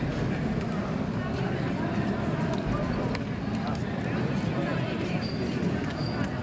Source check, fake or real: real